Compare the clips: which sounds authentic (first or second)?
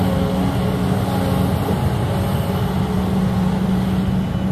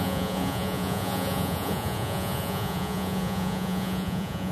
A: first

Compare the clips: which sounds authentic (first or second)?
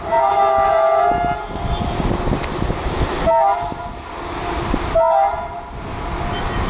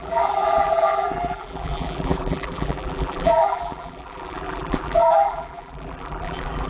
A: first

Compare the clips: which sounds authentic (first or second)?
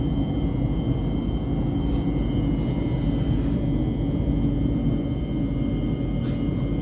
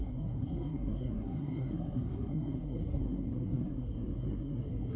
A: first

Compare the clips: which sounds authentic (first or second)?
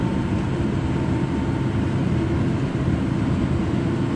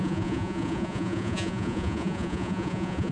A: first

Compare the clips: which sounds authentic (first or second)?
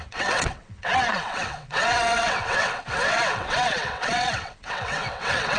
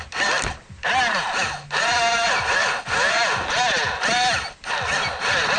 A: second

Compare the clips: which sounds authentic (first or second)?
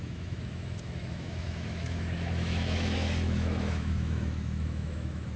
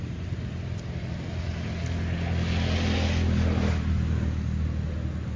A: second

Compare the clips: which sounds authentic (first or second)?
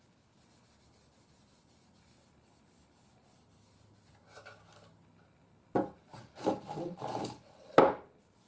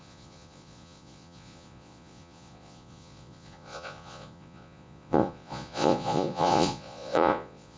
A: first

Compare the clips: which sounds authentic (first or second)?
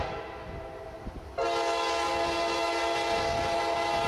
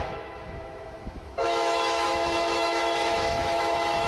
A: first